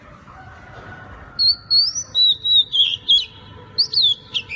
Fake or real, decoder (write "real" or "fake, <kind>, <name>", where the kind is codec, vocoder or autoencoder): real